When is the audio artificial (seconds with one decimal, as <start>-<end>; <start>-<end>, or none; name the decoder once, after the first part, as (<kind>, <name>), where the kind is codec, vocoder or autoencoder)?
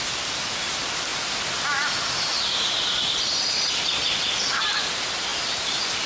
1.1-2.4 (vocoder, BigVGAN v2)